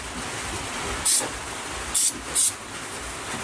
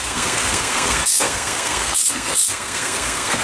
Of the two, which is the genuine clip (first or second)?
first